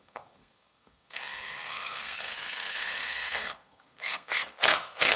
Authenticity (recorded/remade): remade